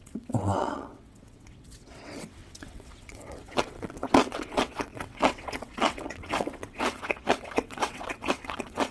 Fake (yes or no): yes